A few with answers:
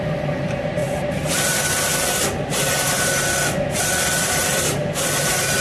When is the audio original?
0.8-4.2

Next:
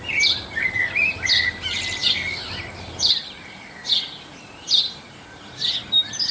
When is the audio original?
0.0-2.0; 5.7-6.3

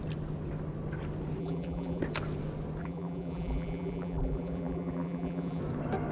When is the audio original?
0.0-1.4; 2.0-2.8; 5.6-6.1

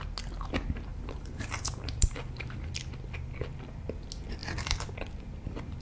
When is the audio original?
0.0-0.9; 2.7-5.8

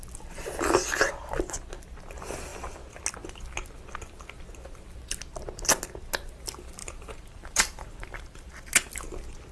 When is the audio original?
0.0-6.8; 8.5-9.5

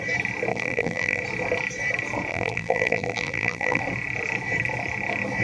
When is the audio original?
0.0-0.5; 1.2-2.3; 3.8-5.4